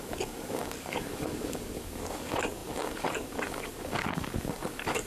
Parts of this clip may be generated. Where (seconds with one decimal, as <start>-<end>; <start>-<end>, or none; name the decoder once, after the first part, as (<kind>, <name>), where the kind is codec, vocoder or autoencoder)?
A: 0.0-5.1 (codec, DAC)